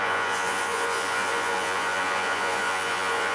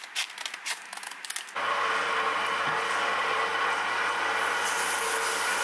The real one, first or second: second